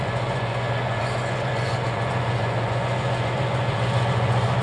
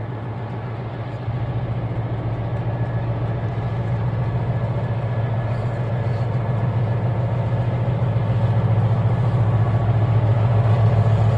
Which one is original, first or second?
second